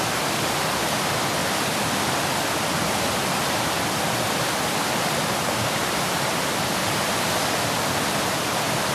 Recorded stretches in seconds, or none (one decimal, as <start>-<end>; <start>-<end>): 0.0-8.9